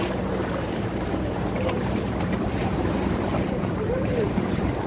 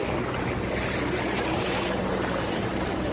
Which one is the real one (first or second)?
second